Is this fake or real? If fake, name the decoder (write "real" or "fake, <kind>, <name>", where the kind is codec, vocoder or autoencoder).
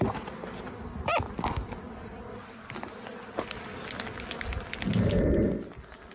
real